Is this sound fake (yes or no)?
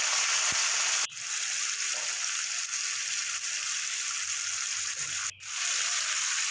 no